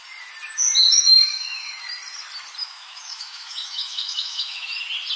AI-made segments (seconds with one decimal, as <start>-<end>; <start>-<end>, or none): 0.9-1.8; 2.6-4.8